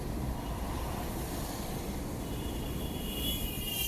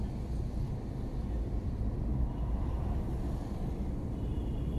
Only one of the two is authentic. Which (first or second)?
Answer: second